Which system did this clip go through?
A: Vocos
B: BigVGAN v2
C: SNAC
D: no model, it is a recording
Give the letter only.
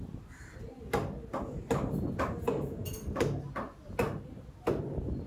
D